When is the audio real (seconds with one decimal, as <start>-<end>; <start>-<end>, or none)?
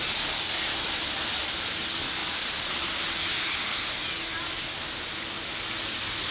0.0-6.3